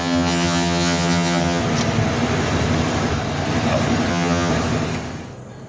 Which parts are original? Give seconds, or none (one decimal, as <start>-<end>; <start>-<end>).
1.6-4.1; 4.5-5.7

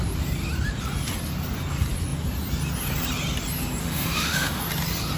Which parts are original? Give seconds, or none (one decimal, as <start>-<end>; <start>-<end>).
0.0-3.8; 4.6-5.2

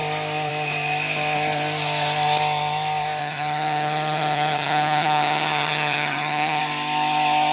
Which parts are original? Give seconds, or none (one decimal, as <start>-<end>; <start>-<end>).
0.0-3.2; 6.6-7.5

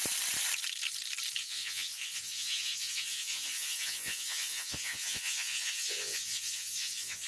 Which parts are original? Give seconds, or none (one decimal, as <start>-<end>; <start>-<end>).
0.0-1.4

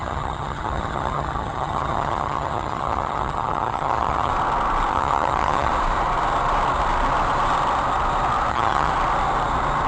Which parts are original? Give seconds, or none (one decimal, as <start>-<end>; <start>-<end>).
4.3-4.9; 5.7-8.5; 8.9-9.9

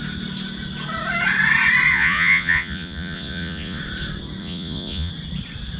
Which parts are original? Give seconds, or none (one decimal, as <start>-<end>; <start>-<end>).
0.0-1.9; 3.8-4.4; 5.1-5.8

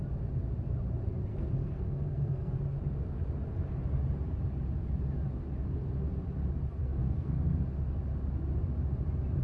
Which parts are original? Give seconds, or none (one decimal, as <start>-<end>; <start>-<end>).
0.0-1.3; 2.5-6.8; 7.6-9.4